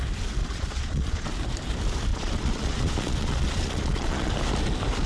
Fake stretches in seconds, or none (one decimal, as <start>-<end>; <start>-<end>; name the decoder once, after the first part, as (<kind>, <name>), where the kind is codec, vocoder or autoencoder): 0.4-1.3 (vocoder, Vocos); 2.1-4.3